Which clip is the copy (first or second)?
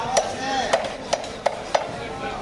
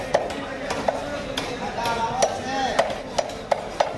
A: first